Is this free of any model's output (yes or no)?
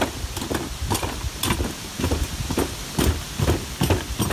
yes